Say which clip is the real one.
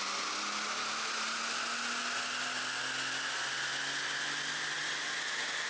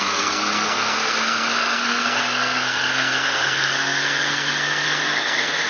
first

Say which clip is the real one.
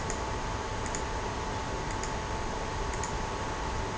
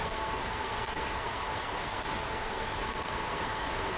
first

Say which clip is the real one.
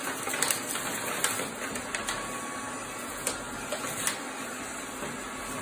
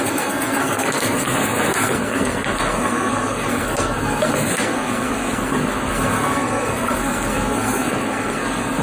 first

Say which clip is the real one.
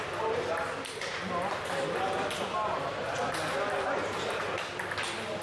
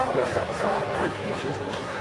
first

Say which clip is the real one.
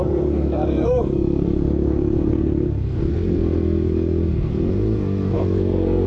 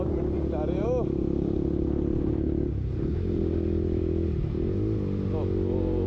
second